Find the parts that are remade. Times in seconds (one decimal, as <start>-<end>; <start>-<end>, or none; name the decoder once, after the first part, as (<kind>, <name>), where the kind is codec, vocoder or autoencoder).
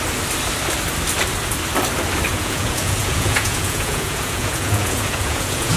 2.3-5.8 (vocoder, Vocos)